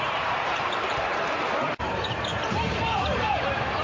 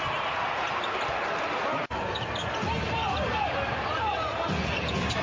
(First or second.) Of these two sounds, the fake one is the first